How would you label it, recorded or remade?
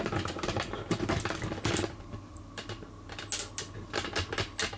recorded